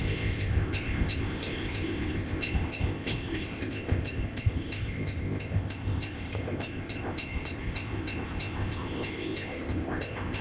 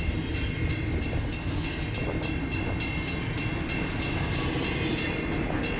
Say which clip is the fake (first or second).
first